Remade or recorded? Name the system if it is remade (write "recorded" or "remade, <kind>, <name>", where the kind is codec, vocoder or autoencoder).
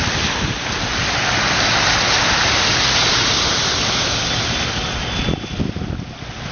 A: recorded